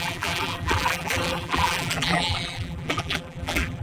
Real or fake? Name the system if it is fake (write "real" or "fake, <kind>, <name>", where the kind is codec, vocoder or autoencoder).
fake, vocoder, BigVGAN v2